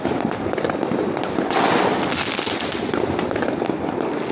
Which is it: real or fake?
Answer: real